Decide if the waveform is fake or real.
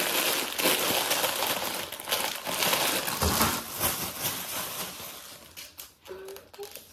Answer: real